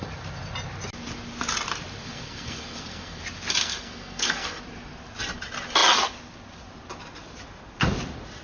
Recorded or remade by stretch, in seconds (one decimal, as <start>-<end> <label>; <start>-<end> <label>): 0.0-2.0 recorded; 2.0-3.2 remade; 3.2-3.6 recorded; 3.6-4.6 remade; 4.6-8.4 recorded